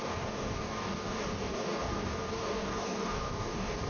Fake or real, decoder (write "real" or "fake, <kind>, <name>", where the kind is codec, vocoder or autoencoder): fake, codec, DAC